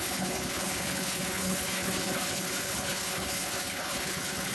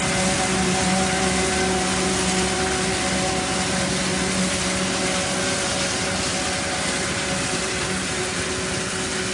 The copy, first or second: first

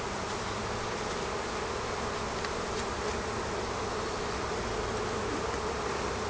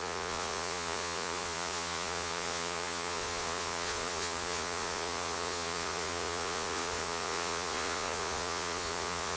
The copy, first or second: second